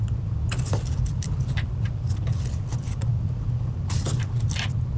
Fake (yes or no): no